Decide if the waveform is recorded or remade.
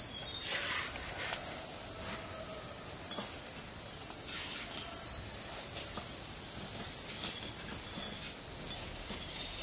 recorded